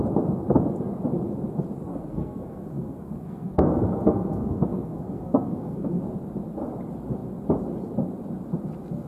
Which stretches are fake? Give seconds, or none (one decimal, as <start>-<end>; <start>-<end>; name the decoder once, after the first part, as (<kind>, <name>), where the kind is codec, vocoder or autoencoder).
1.9-6.0 (codec, SNAC)